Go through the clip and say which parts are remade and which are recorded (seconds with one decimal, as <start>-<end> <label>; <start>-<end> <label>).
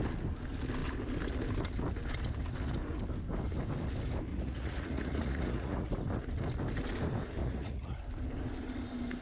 0.0-4.3 recorded; 4.3-5.9 remade; 5.9-7.4 recorded; 7.4-8.0 remade; 8.0-9.2 recorded